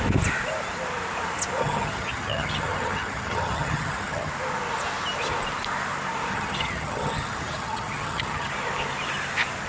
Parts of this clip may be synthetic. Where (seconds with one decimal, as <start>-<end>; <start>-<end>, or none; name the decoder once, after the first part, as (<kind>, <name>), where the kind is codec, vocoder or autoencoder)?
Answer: 1.6-4.3 (vocoder, HiFi-GAN); 6.3-8.5